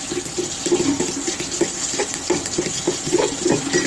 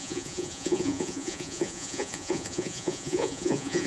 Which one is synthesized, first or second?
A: second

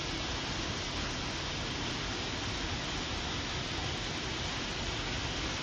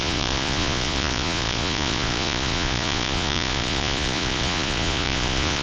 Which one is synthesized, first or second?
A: second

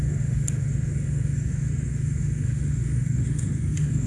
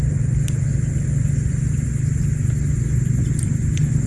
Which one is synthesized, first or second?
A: first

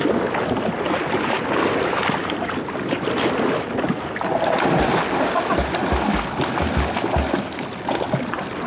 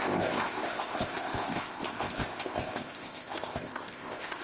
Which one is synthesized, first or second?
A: second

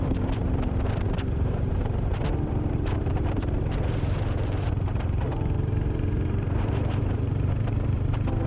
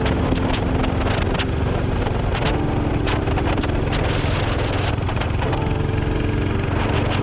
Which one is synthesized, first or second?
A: first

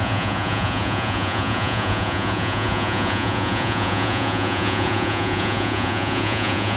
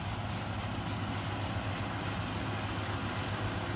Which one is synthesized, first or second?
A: first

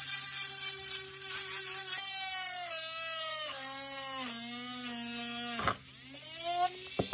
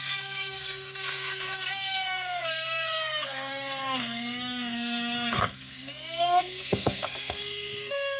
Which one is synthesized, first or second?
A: second